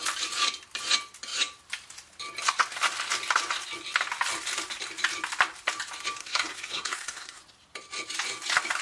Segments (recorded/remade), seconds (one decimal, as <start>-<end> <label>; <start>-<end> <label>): 0.0-6.2 recorded; 6.2-7.4 remade; 7.4-8.8 recorded